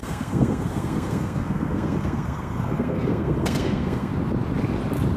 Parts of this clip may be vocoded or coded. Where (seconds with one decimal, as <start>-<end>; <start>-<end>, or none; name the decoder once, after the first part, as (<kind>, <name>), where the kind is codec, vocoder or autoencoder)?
0.0-4.1 (codec, SNAC)